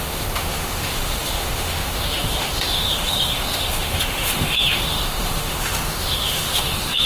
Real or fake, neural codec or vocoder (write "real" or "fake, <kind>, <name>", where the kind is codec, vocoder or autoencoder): fake, autoencoder, DAC-VAE